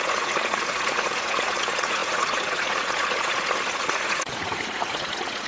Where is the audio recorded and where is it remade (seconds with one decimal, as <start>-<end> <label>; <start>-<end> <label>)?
0.0-5.5 remade